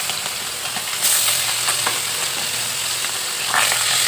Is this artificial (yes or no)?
no